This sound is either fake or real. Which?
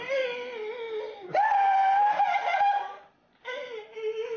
real